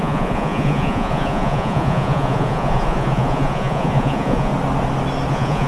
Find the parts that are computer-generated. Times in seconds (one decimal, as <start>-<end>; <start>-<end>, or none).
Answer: 0.0-4.5; 5.3-5.7

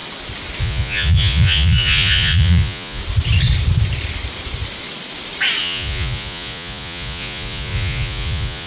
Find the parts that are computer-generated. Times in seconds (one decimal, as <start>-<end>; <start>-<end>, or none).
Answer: 0.6-3.0; 5.6-8.7

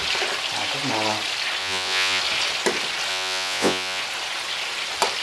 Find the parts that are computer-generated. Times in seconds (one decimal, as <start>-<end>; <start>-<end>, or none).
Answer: 1.6-2.2; 3.1-4.0

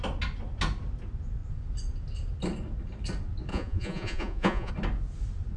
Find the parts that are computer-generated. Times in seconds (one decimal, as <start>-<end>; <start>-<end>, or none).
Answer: 3.5-4.7